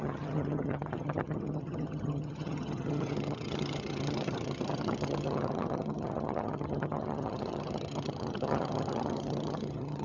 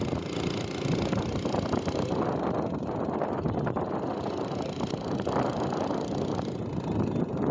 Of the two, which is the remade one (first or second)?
first